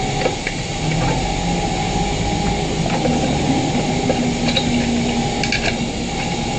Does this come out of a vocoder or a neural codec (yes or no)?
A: no